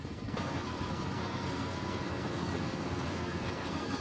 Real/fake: fake